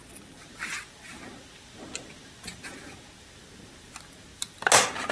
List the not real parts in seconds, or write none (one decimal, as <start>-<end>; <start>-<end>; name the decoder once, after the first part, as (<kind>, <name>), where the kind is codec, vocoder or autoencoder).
none